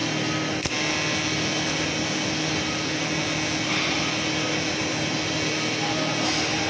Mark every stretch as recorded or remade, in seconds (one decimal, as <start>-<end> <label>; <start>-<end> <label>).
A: 0.0-6.7 recorded